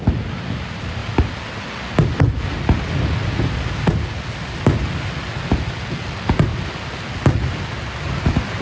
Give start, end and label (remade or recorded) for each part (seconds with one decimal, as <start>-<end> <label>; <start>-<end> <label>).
0.0-8.6 recorded